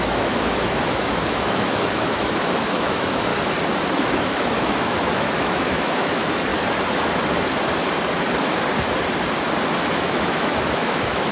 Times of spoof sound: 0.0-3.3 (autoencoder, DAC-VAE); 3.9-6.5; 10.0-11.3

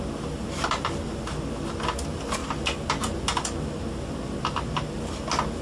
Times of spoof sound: none

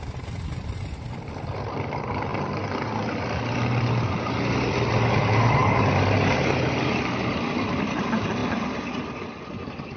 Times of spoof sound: none

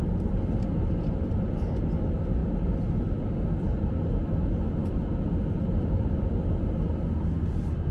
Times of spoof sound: none

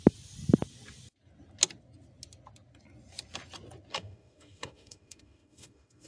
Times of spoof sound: 3.9-6.1 (autoencoder, DAC-VAE)